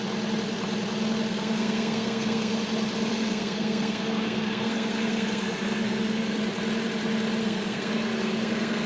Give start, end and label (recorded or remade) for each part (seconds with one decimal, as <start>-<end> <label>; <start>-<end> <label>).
0.0-1.3 recorded; 1.3-2.5 remade; 2.5-3.1 recorded; 3.1-6.4 remade; 6.4-7.4 recorded; 7.4-8.9 remade

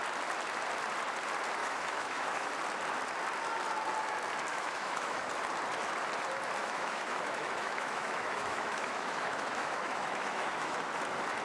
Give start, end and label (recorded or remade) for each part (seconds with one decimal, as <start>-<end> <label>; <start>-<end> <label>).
0.0-1.6 recorded; 1.6-2.5 remade; 2.5-4.5 recorded; 4.5-5.3 remade; 5.3-6.6 recorded; 6.6-10.8 remade; 10.8-11.4 recorded

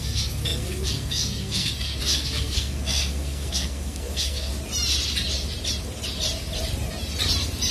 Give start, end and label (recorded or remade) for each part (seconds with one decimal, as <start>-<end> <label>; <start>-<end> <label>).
0.0-4.5 remade; 4.5-7.7 recorded

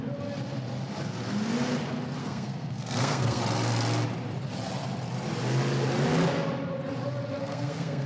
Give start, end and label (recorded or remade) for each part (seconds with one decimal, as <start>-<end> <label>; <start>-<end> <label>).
0.0-2.2 recorded; 2.2-3.4 remade; 3.4-7.4 recorded; 7.4-8.1 remade

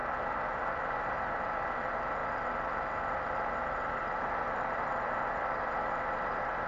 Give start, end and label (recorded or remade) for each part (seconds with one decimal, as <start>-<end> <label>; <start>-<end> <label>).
0.0-0.9 remade; 0.9-2.2 recorded; 2.2-5.9 remade; 5.9-6.7 recorded

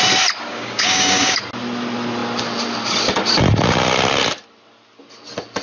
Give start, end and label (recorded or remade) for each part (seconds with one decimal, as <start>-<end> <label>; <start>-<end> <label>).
0.0-0.5 recorded; 0.5-1.4 remade; 1.4-5.6 recorded

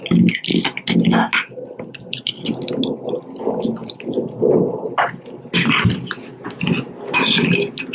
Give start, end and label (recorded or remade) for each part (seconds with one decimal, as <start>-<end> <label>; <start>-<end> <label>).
0.0-7.9 recorded